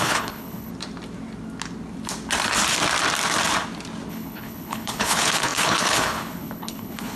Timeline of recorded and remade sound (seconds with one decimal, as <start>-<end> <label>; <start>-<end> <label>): 0.0-0.7 remade; 0.7-4.1 recorded; 4.1-7.2 remade